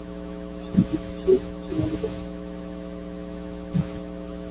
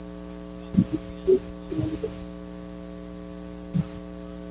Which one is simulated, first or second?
first